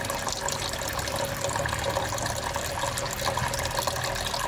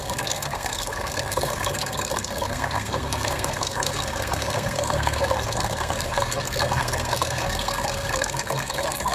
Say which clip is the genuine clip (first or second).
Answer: first